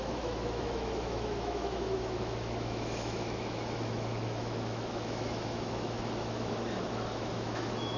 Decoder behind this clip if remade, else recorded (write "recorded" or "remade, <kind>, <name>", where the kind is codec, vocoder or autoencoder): remade, autoencoder, DAC-VAE